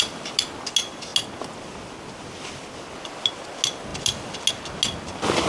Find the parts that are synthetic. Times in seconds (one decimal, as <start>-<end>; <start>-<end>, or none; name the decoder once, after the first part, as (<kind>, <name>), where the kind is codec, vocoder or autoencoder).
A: none